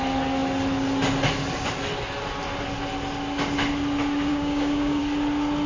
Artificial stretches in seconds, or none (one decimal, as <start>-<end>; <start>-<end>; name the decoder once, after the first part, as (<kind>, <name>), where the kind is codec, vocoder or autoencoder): 4.3-5.0 (codec, DAC)